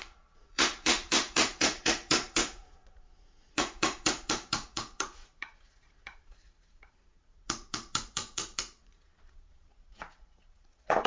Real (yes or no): no